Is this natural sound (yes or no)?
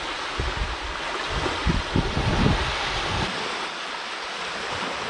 yes